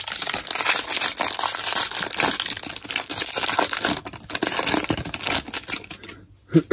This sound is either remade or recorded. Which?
recorded